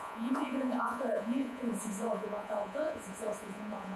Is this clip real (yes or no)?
no